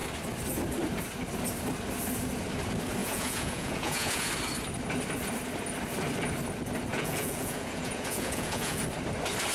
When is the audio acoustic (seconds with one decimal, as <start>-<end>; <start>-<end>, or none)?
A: 0.0-3.0; 4.3-6.9; 8.8-9.5